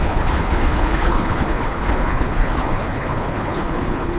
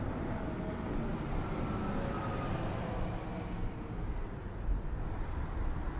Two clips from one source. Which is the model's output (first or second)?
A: first